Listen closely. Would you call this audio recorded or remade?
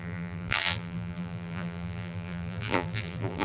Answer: remade